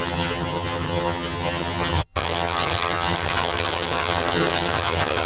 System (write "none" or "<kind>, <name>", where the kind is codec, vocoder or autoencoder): vocoder, HiFi-GAN